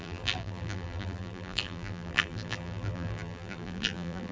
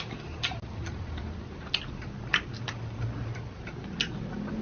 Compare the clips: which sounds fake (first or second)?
first